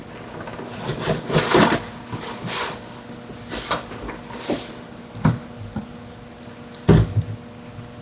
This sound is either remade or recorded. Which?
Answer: recorded